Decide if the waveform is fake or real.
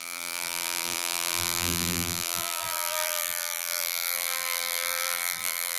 fake